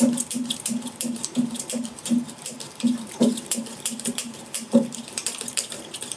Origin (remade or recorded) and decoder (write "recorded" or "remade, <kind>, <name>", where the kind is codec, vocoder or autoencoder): remade, vocoder, BigVGAN v2